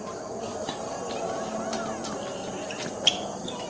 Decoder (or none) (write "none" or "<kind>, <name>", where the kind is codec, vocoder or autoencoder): vocoder, BigVGAN v2